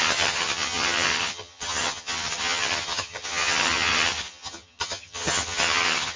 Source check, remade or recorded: remade